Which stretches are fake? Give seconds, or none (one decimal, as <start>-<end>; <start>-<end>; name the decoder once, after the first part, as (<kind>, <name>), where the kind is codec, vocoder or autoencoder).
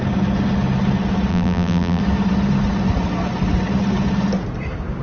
1.3-2.0 (vocoder, BigVGAN v2)